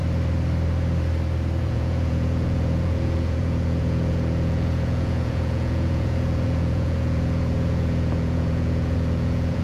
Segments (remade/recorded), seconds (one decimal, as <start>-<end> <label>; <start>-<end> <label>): 0.0-1.6 recorded; 1.6-9.6 remade